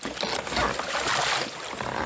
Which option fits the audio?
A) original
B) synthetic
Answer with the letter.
A